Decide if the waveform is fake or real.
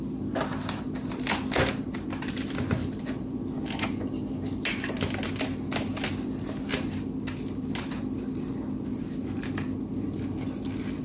real